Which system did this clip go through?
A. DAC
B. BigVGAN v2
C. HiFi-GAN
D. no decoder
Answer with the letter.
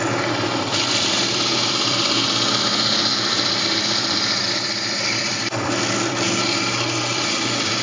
B